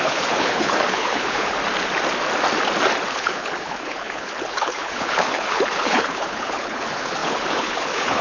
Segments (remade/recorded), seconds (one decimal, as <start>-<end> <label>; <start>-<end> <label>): 0.0-1.6 remade; 1.6-3.1 recorded; 3.1-8.2 remade